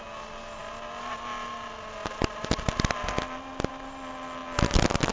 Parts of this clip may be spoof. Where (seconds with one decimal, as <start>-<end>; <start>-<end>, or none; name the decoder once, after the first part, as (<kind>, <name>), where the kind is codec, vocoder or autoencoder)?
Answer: none